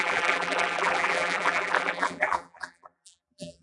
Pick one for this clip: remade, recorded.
remade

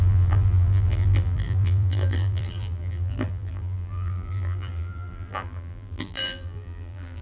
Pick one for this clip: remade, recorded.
remade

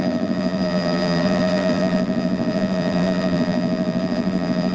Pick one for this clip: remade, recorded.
remade